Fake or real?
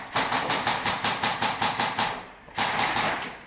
fake